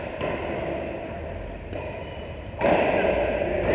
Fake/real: real